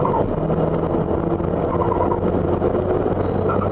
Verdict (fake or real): real